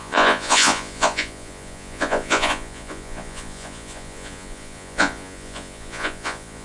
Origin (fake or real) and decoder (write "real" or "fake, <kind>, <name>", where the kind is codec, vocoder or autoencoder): fake, vocoder, Vocos